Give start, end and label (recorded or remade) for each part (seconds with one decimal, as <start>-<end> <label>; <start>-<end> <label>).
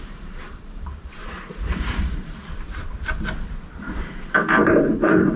0.0-2.4 remade; 2.4-4.9 recorded; 4.9-5.4 remade